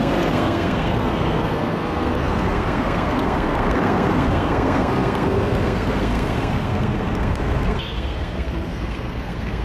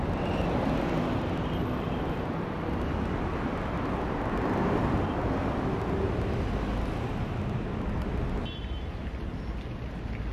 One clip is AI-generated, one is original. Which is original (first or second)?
second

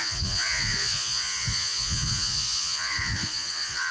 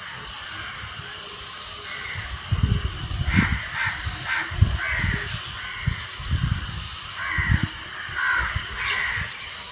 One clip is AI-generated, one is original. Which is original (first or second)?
second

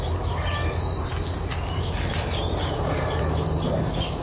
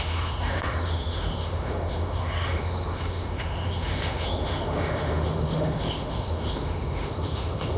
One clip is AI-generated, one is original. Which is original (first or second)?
first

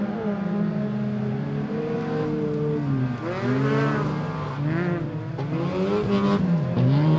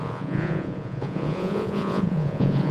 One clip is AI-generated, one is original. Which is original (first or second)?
first